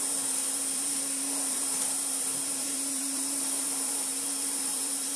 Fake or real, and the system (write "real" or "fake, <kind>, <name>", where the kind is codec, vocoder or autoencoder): fake, vocoder, BigVGAN v2